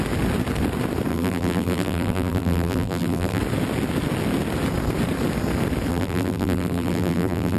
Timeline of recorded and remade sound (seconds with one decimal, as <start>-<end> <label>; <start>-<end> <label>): 0.0-1.1 recorded; 1.1-3.4 remade; 3.4-5.9 recorded; 5.9-7.6 remade